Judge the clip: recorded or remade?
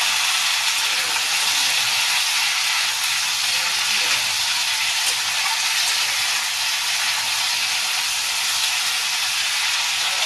recorded